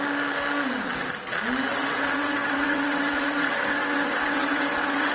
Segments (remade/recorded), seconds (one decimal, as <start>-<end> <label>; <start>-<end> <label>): 0.0-1.7 recorded; 1.7-5.1 remade